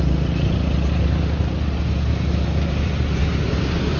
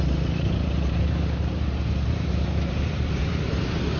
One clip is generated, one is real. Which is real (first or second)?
first